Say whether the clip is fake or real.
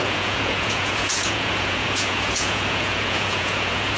fake